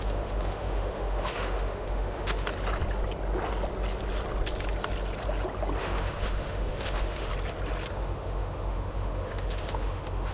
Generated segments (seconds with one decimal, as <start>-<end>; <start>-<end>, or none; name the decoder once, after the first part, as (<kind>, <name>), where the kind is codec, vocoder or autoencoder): 0.0-2.5 (autoencoder, DAC-VAE); 5.8-7.3; 7.9-10.3